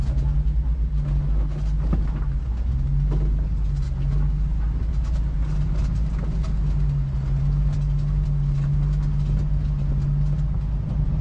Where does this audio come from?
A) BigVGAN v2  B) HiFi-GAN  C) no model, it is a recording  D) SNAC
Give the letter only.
C